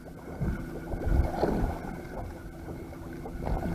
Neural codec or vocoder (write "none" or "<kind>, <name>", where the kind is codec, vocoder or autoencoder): none